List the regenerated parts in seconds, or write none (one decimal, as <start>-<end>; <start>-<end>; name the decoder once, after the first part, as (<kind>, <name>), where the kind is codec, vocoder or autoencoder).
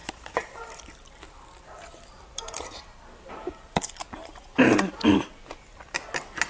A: 0.0-3.9 (vocoder, BigVGAN v2)